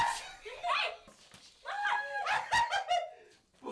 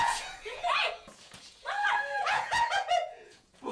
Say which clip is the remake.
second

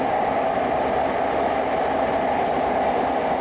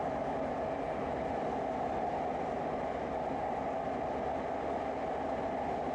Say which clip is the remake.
first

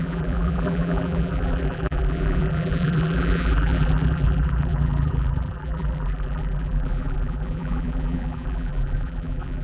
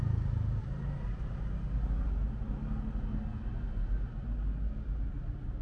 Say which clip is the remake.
first